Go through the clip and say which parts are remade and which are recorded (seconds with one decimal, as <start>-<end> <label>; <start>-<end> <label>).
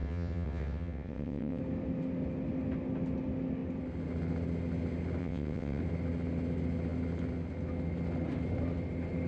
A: 0.0-1.6 remade; 1.6-5.2 recorded; 5.2-5.8 remade; 5.8-9.3 recorded